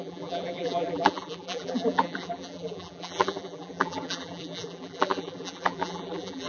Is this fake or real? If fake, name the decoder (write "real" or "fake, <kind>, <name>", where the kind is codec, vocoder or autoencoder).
fake, vocoder, BigVGAN v2